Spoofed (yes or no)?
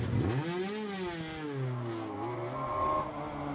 no